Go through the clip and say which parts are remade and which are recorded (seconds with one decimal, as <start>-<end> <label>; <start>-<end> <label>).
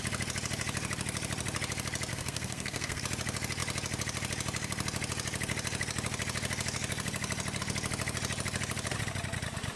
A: 0.0-2.1 recorded; 2.1-3.0 remade; 3.0-9.8 recorded